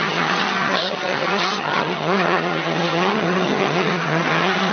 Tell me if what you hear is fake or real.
fake